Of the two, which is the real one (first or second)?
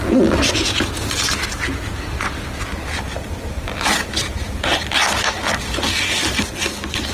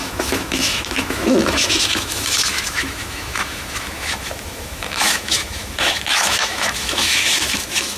first